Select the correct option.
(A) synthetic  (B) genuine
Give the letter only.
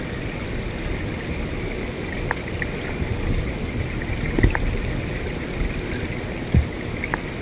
B